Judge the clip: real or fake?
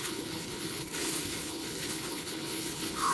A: fake